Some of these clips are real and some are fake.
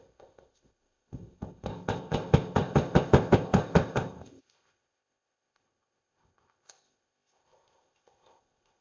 fake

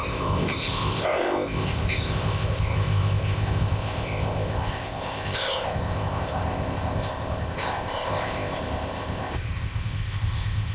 fake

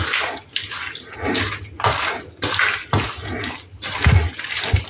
real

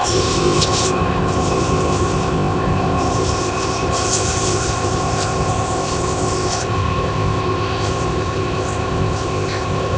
fake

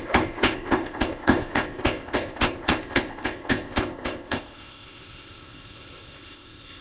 fake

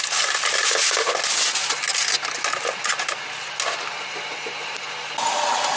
real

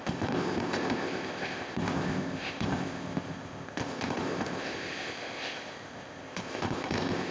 fake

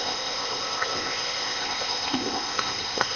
fake